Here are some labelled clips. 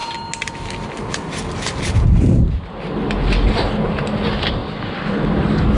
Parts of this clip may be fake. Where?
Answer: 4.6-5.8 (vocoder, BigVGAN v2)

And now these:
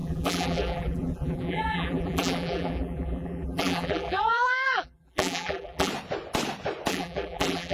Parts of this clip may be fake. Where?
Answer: 0.0-5.9 (vocoder, BigVGAN v2); 6.9-7.7

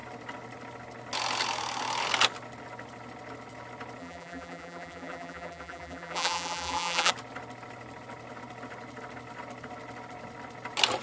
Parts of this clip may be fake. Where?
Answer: 4.0-7.1 (vocoder, BigVGAN v2)

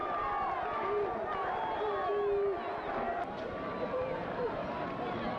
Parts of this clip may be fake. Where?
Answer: none

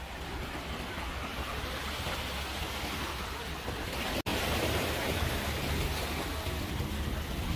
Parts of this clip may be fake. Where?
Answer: 1.3-1.9 (vocoder, BigVGAN v2); 4.3-5.7

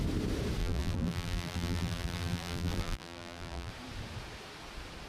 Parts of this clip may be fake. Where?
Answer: 0.6-3.7 (vocoder, BigVGAN v2)

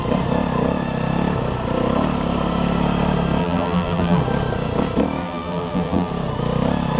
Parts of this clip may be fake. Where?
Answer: 3.4-4.2 (vocoder, BigVGAN v2); 5.2-6.1